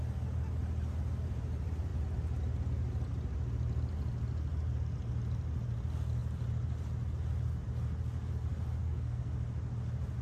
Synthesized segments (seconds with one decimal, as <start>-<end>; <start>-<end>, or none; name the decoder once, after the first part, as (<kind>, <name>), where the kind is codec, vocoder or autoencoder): 8.8-9.3 (codec, SNAC)